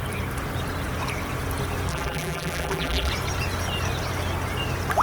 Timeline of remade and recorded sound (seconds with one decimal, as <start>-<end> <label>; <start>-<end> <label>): 0.0-1.9 recorded; 1.9-3.1 remade; 3.1-5.0 recorded